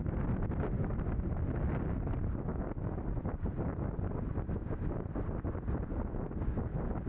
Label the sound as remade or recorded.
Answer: recorded